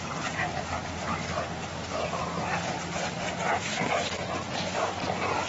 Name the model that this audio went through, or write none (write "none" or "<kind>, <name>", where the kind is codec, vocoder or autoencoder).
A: none